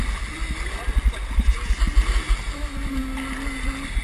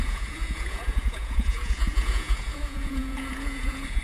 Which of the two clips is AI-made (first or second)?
second